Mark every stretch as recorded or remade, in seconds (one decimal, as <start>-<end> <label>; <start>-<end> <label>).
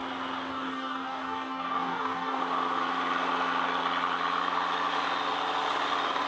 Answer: 0.0-0.5 recorded; 0.5-2.4 remade; 2.4-6.3 recorded